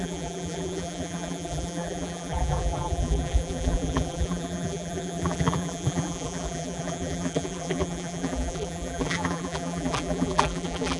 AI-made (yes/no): yes